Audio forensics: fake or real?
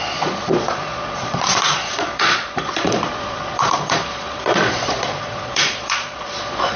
fake